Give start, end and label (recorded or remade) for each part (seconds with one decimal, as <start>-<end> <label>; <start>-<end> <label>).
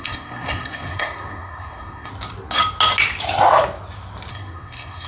0.0-2.1 remade; 2.1-4.3 recorded; 4.3-5.1 remade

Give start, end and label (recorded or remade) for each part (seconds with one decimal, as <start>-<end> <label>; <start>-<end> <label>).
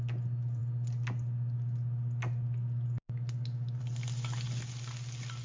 0.0-5.4 recorded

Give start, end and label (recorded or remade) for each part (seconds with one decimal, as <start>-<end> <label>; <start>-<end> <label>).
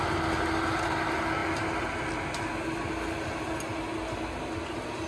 0.0-5.1 recorded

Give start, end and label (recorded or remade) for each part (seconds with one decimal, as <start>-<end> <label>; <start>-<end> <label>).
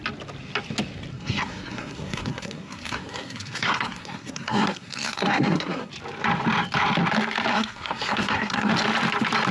0.0-1.1 recorded; 1.1-5.9 remade; 5.9-7.5 recorded; 7.5-8.7 remade; 8.7-9.5 recorded